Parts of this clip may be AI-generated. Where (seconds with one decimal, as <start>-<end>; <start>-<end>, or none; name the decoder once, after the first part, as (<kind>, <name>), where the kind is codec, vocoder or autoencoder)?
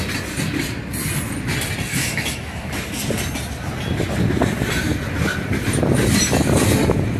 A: 1.9-2.7 (autoencoder, DAC-VAE)